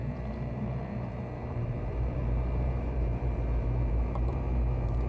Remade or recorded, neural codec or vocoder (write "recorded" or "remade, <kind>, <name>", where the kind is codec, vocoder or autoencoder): remade, vocoder, BigVGAN v2